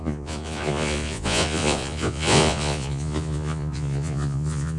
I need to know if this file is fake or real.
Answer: fake